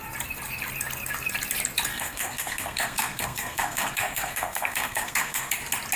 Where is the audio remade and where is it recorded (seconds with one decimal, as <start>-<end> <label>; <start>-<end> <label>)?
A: 0.0-1.9 recorded; 1.9-5.5 remade; 5.5-6.0 recorded